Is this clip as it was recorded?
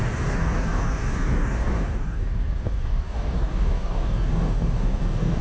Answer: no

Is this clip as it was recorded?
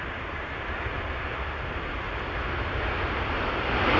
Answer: yes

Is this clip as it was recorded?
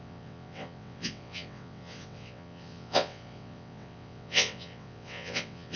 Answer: no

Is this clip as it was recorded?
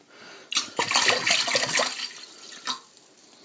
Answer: yes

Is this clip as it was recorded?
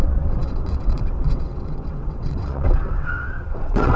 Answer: no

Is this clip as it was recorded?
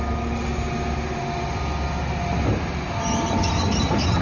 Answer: yes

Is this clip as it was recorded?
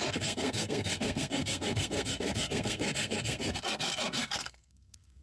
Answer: no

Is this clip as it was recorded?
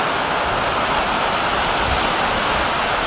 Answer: yes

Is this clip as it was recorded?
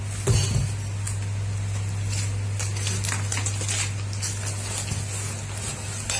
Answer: yes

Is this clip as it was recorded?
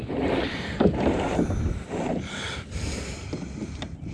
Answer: no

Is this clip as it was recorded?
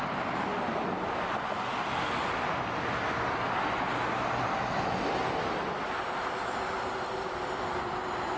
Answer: yes